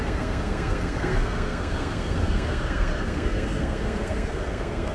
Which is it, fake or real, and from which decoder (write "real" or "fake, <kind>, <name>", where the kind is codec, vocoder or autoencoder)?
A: fake, codec, SNAC